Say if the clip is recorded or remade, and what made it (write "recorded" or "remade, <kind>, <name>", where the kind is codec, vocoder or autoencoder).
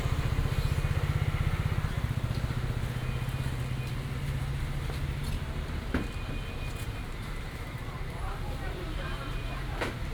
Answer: recorded